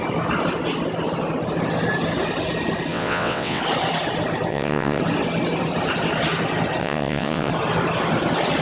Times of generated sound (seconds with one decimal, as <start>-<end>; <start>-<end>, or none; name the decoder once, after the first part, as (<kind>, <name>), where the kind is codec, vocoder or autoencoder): 2.9-3.6 (vocoder, WaveNeXt); 4.5-5.0; 6.8-7.5